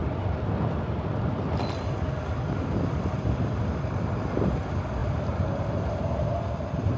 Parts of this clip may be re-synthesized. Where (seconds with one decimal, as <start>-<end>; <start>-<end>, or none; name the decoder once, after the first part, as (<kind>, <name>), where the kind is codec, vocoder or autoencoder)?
none